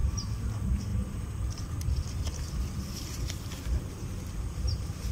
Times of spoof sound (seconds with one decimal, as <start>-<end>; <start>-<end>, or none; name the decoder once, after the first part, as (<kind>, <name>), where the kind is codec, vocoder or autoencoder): none